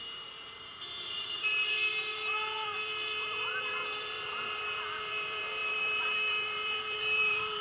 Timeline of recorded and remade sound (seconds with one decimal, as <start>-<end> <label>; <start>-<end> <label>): 0.0-7.6 remade